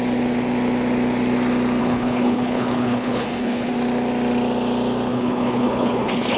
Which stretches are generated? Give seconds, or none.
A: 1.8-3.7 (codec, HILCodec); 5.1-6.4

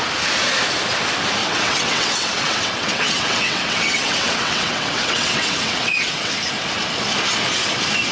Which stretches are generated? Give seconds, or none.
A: 1.4-6.3 (vocoder, WaveNeXt)

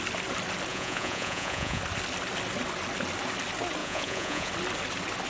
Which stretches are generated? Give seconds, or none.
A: 0.7-1.8 (vocoder, Vocos); 3.8-4.5

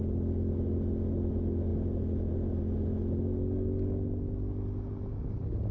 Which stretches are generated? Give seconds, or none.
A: none

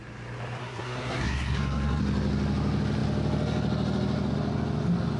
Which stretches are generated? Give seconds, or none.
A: 0.6-2.0 (codec, SNAC)

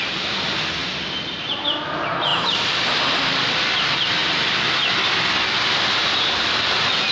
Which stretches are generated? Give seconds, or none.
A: 0.8-1.8 (vocoder, BigVGAN v2); 2.3-3.0; 4.2-6.0

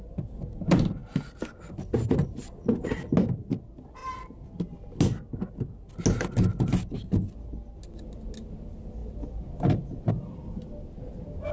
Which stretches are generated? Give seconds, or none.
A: none

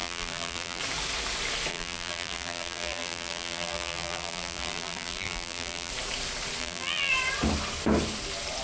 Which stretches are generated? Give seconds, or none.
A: 0.0-0.8 (vocoder, BigVGAN v2); 1.7-5.9; 6.6-7.1